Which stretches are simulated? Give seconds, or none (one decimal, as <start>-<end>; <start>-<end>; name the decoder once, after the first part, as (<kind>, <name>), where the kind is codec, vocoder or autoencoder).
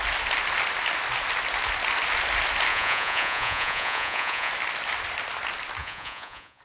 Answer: 2.7-4.5 (vocoder, Vocos); 5.8-6.6